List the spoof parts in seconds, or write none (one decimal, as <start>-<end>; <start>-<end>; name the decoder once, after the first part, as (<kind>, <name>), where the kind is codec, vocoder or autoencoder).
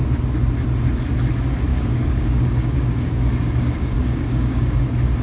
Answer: 1.7-4.8 (codec, DAC)